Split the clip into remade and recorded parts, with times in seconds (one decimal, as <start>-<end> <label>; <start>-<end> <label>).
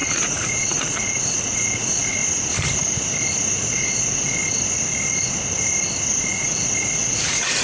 0.0-2.2 remade; 2.2-3.7 recorded; 3.7-4.4 remade; 4.4-6.2 recorded; 6.2-7.6 remade